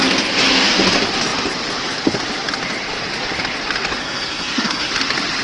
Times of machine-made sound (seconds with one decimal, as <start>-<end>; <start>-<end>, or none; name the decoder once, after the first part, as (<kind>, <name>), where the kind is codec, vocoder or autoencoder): 4.0-4.9 (codec, SNAC)